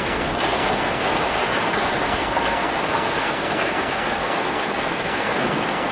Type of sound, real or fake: fake